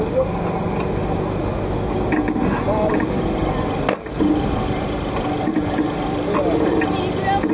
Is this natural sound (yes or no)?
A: yes